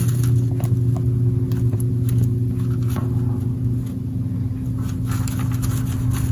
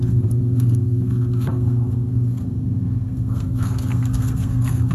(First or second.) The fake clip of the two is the second